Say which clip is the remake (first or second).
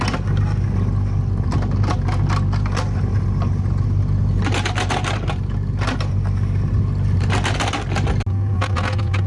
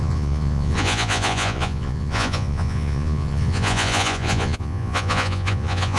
second